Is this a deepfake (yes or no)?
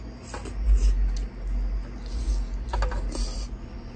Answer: no